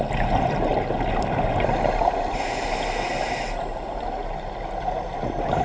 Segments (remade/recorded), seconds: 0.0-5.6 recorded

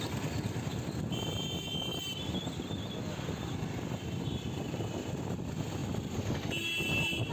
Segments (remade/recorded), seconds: 0.0-7.3 recorded

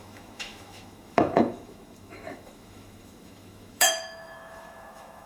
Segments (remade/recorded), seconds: 0.0-5.3 remade

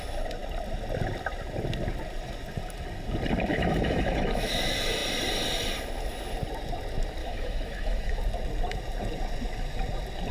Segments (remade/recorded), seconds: 0.0-3.5 recorded; 3.5-4.5 remade; 4.5-7.2 recorded; 7.2-8.2 remade; 8.2-10.3 recorded

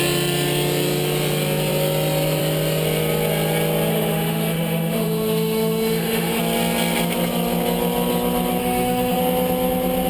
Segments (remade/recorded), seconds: 0.0-3.9 recorded; 3.9-6.4 remade; 6.4-8.6 recorded; 8.6-9.2 remade; 9.2-10.1 recorded

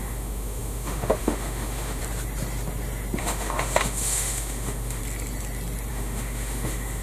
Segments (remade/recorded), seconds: 0.0-2.0 remade; 2.0-3.2 recorded; 3.2-5.0 remade; 5.0-5.9 recorded; 5.9-7.0 remade

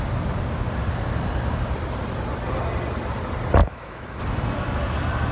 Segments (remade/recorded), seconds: 0.0-3.6 recorded; 3.6-4.2 remade; 4.2-5.3 recorded

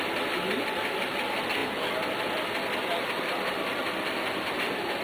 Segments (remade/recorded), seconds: 0.0-5.0 recorded